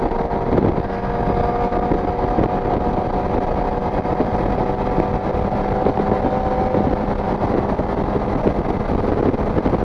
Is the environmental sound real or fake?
real